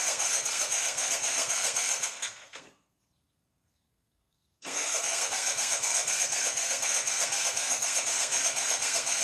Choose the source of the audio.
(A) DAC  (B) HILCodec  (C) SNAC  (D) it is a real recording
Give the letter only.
C